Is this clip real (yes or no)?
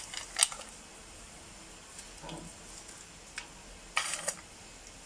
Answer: yes